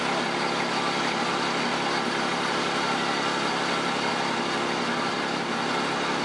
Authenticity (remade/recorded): recorded